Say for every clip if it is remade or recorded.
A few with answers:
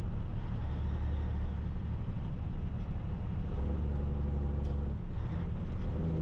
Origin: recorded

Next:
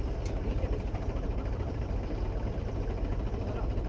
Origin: recorded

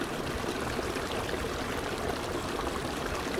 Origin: recorded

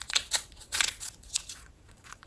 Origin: remade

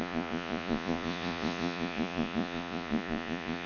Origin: remade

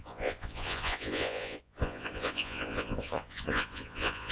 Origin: remade